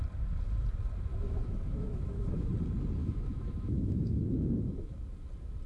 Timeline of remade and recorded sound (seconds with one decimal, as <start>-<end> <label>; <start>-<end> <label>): 0.0-1.1 recorded; 1.1-2.5 remade; 2.5-3.0 recorded; 3.0-5.0 remade; 5.0-5.7 recorded